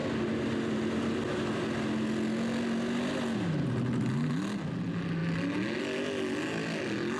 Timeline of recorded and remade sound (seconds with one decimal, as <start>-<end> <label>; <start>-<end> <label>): 0.0-7.2 recorded